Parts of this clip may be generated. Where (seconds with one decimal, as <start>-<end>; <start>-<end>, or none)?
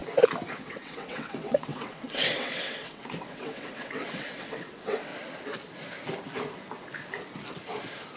0.6-5.1